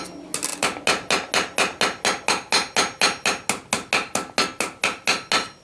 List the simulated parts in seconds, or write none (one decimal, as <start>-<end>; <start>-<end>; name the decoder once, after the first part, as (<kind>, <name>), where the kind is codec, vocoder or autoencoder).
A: none